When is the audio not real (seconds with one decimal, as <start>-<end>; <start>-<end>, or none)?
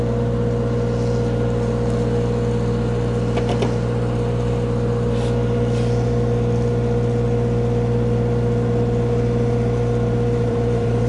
10.4-11.1